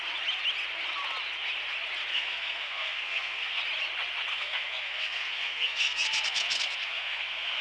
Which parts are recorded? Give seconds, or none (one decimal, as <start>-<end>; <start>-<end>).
0.0-2.1; 3.6-4.3

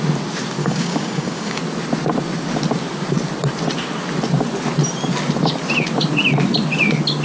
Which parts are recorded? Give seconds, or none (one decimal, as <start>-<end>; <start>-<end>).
0.0-0.6; 1.6-7.2

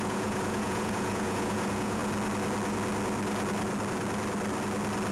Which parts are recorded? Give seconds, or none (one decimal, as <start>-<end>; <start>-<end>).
2.0-5.1

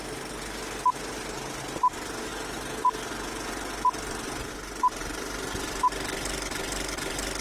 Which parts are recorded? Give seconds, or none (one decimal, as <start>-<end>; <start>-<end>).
0.0-7.4